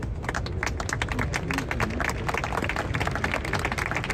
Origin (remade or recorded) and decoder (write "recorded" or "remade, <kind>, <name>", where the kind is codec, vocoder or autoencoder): recorded